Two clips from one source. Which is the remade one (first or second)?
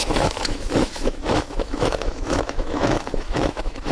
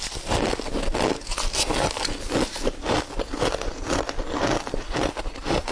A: first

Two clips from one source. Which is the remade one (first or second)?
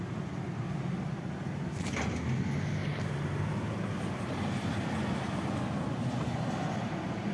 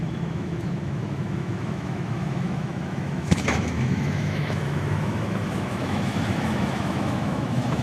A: second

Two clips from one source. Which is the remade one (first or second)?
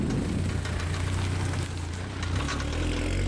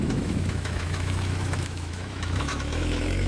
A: second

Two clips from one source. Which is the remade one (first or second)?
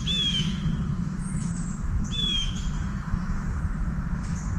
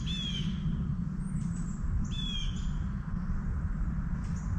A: first